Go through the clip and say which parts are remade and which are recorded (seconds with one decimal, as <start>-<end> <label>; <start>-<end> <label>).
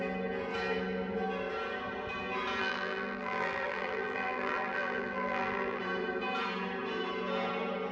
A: 0.0-2.6 recorded; 2.6-5.8 remade; 5.8-7.9 recorded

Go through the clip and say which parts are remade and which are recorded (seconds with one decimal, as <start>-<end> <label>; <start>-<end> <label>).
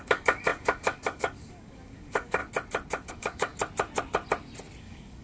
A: 0.0-2.4 remade; 2.4-3.1 recorded; 3.1-3.5 remade; 3.5-4.8 recorded; 4.8-5.2 remade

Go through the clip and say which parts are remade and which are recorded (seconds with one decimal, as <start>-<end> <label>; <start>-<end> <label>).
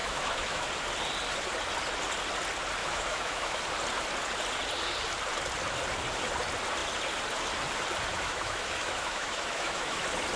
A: 0.0-0.7 remade; 0.7-2.8 recorded; 2.8-3.6 remade; 3.6-8.1 recorded; 8.1-10.0 remade; 10.0-10.4 recorded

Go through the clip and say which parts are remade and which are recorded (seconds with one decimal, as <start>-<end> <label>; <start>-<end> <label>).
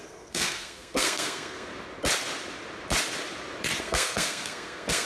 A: 0.0-1.7 remade; 1.7-3.8 recorded; 3.8-5.1 remade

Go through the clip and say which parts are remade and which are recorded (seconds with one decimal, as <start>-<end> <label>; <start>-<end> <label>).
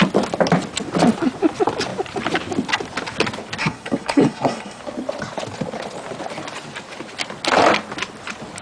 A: 0.0-3.6 recorded; 3.6-4.8 remade; 4.8-8.6 recorded